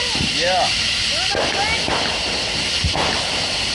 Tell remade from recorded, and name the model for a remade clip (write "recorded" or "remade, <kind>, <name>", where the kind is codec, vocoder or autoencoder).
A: recorded